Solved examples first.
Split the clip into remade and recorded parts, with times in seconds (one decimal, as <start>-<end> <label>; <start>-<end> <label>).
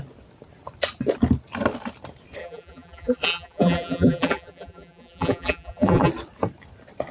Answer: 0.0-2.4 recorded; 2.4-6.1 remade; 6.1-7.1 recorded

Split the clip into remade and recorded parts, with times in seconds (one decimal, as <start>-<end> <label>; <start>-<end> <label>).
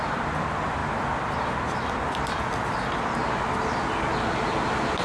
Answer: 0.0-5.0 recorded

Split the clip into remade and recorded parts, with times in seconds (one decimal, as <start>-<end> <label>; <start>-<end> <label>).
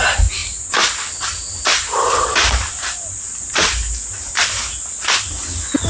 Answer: 0.0-1.7 recorded; 1.7-4.3 remade; 4.3-5.9 recorded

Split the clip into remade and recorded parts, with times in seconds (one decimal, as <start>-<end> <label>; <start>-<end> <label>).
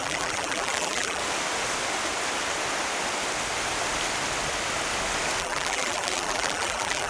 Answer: 0.0-1.2 remade; 1.2-5.4 recorded; 5.4-7.1 remade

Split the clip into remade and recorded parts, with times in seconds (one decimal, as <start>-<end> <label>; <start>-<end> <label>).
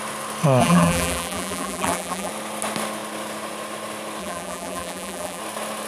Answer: 0.0-0.6 recorded; 0.6-2.3 remade; 2.3-4.2 recorded; 4.2-5.4 remade; 5.4-5.9 recorded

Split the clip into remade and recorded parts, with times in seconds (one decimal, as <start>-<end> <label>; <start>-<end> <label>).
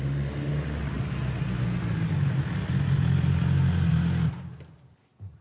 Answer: 0.0-5.4 recorded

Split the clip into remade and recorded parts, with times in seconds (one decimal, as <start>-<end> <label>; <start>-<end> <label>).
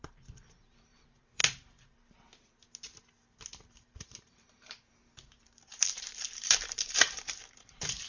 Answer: 0.0-1.4 remade; 1.4-3.7 recorded; 3.7-8.1 remade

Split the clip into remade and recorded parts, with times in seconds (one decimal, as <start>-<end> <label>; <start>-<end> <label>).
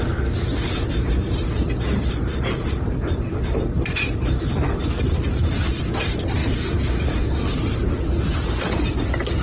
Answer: 0.0-1.9 recorded; 1.9-5.8 remade; 5.8-6.4 recorded; 6.4-8.8 remade; 8.8-9.4 recorded